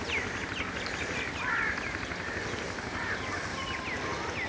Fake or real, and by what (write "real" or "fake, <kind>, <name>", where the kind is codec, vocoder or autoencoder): real